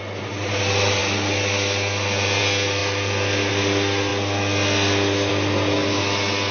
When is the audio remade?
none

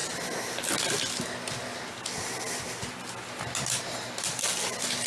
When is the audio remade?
none